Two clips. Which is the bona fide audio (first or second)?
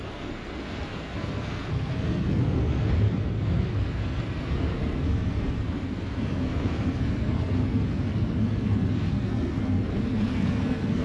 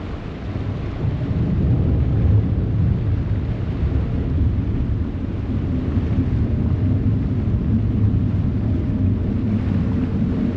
second